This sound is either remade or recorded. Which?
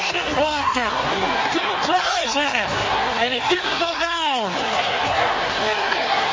remade